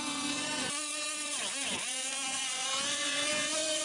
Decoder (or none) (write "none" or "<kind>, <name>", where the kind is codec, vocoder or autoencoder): vocoder, Vocos